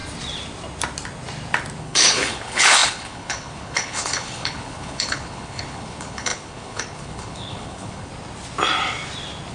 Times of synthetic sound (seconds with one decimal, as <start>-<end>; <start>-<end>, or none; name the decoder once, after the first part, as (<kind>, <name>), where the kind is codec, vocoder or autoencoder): 1.8-8.1 (codec, HILCodec)